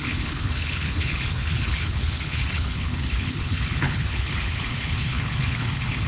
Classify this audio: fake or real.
fake